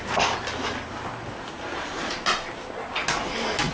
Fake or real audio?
real